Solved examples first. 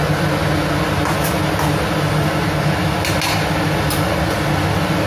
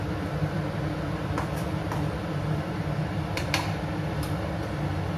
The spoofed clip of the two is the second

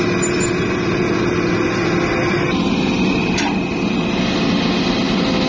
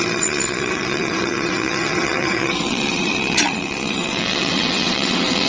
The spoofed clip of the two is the second